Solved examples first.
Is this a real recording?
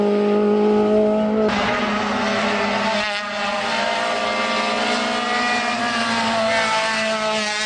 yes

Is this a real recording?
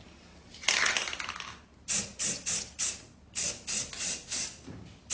yes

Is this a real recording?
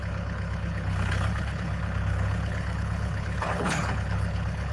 no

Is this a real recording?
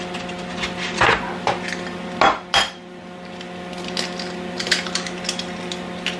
yes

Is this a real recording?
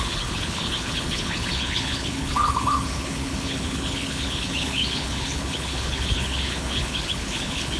no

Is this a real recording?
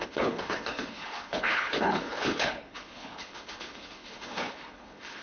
no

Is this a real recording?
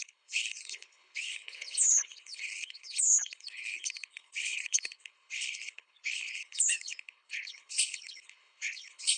no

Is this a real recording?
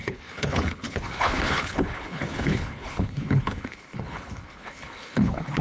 no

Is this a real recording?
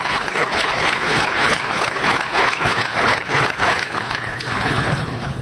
no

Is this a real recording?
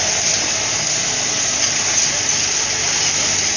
yes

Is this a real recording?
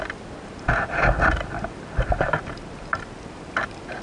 yes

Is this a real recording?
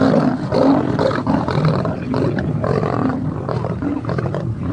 yes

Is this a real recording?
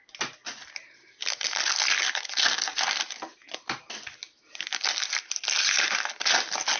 yes